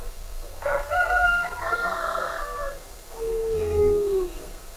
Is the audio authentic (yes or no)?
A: no